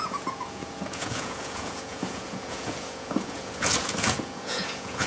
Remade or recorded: remade